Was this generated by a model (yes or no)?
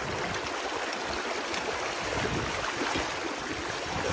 no